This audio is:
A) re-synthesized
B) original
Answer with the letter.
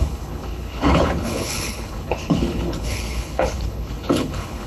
A